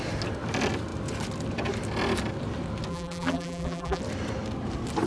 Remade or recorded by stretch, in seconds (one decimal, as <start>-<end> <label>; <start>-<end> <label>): 0.0-2.9 recorded; 2.9-4.0 remade; 4.0-5.1 recorded